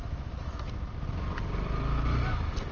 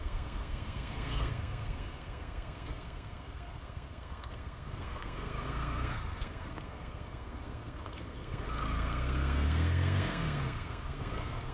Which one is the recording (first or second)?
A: first